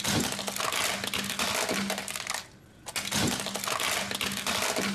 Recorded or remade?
recorded